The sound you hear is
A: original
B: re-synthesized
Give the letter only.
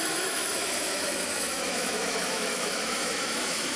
B